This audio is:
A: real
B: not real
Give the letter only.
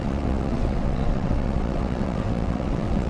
B